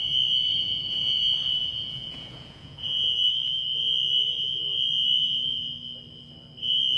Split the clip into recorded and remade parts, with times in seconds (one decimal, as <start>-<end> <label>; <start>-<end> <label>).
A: 0.0-0.5 recorded; 0.5-1.2 remade; 1.2-1.6 recorded; 1.6-3.3 remade; 3.3-7.0 recorded